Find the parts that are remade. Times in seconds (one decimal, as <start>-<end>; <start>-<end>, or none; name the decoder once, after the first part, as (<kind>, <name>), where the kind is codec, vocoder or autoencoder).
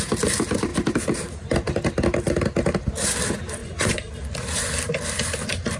3.6-4.1 (vocoder, Vocos)